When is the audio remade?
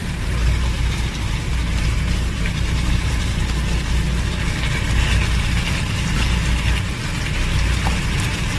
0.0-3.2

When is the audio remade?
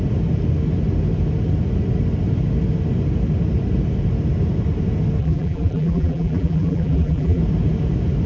5.2-7.4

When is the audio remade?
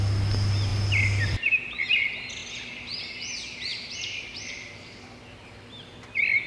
0.7-1.6; 3.7-4.5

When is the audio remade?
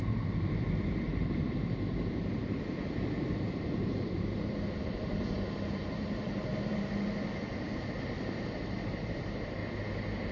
0.0-9.6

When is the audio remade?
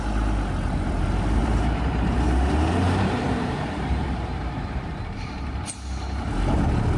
1.4-5.6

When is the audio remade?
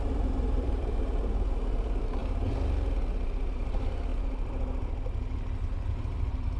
0.0-2.2; 3.5-4.1; 6.0-6.6